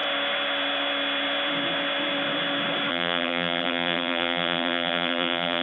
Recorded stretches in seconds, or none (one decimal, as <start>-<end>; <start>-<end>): 0.0-2.9